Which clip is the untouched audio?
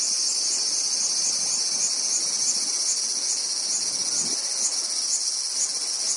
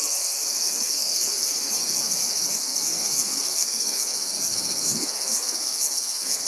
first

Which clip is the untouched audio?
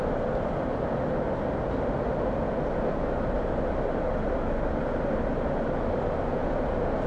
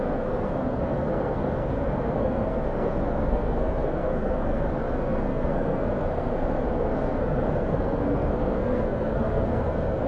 first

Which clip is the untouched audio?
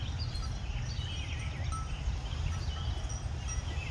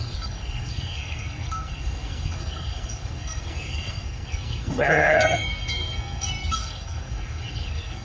first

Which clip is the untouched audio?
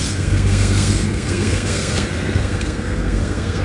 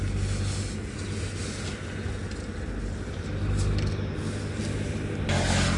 second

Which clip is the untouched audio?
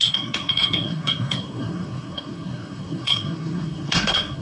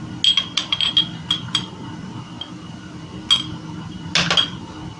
second